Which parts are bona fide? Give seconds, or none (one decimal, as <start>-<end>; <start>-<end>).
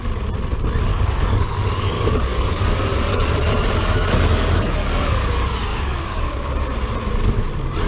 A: 0.0-0.9; 5.3-5.7; 6.2-7.9